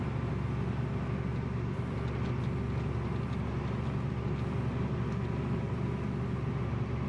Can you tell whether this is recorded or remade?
recorded